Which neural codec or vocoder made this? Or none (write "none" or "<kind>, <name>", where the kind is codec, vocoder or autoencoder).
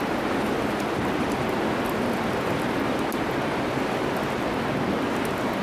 none